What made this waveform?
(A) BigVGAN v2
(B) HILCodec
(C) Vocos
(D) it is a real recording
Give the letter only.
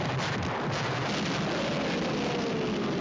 D